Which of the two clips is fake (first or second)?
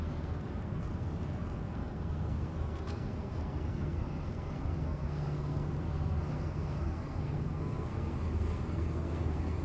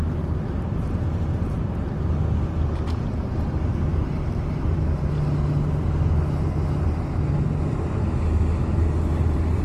first